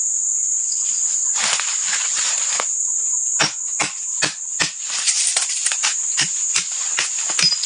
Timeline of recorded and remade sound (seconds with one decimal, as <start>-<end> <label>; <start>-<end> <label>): 0.0-3.7 recorded; 3.7-4.2 remade; 4.2-7.7 recorded